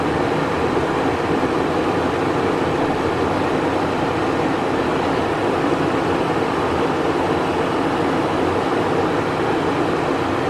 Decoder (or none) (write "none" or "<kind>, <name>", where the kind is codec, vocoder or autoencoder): none